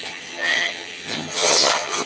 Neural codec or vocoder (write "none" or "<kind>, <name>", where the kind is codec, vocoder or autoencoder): vocoder, HiFi-GAN